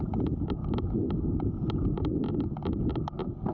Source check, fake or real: real